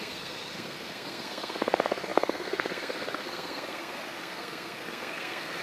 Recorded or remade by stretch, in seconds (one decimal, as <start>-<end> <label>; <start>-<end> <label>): 0.0-5.6 remade